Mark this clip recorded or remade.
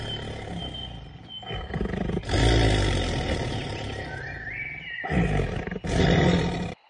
recorded